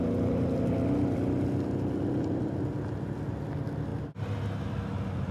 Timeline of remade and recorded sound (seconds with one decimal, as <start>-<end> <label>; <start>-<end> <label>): 0.0-5.3 recorded